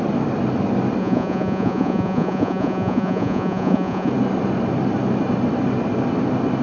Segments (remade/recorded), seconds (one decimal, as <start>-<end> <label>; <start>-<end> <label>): 0.0-1.0 recorded; 1.0-4.1 remade; 4.1-6.6 recorded